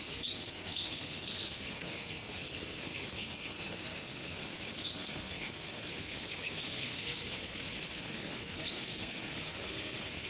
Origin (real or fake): fake